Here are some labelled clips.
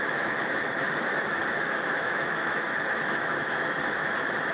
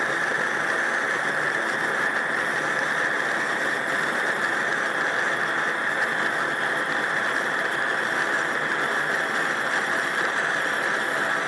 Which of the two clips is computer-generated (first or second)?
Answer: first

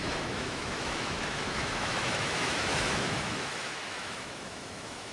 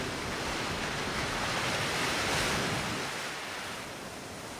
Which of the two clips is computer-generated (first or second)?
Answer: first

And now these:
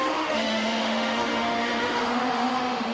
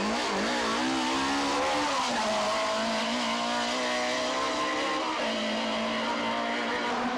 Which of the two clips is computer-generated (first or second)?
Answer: first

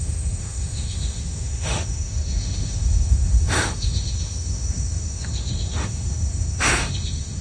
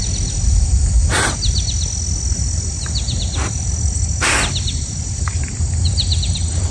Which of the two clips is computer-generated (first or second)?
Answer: first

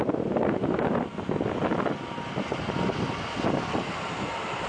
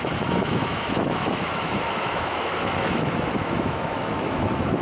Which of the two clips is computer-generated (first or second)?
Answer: second